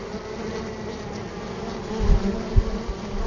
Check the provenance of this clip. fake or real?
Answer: real